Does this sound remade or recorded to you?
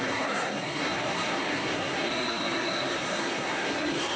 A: remade